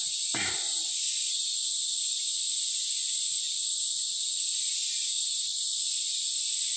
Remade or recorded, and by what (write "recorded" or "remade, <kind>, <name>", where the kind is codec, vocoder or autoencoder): recorded